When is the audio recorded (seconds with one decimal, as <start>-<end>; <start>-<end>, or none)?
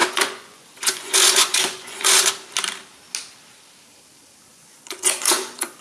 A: 2.3-4.5